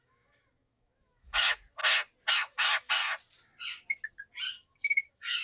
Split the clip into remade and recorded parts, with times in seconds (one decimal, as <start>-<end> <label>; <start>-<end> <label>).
0.0-1.8 remade; 1.8-2.3 recorded; 2.3-3.0 remade; 3.0-4.5 recorded; 4.5-5.4 remade